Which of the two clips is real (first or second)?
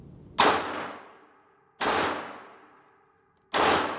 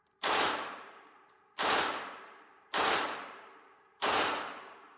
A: first